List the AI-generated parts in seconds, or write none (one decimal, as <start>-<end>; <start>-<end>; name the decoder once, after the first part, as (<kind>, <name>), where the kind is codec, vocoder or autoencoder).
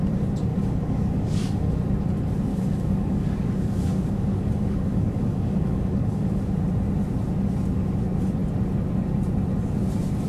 0.5-1.8 (codec, DAC); 2.5-6.4